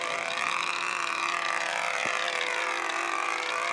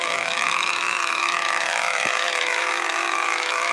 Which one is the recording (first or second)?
first